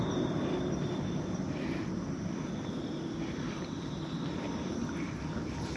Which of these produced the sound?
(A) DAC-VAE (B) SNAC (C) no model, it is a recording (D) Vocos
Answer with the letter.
C